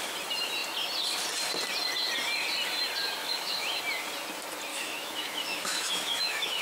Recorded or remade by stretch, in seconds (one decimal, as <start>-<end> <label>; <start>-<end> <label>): 0.0-3.2 recorded; 3.2-3.8 remade; 3.8-4.7 recorded; 4.7-6.6 remade